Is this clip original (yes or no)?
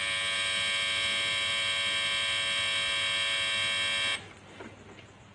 yes